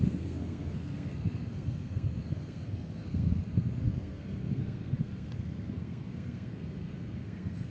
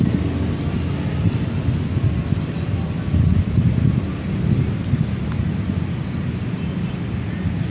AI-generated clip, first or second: first